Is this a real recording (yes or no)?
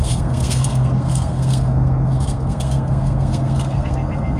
no